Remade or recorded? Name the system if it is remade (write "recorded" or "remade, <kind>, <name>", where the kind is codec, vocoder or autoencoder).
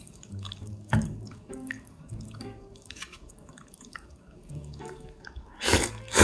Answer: remade, codec, DAC